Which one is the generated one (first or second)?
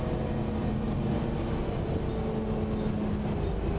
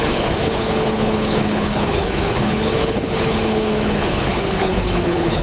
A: second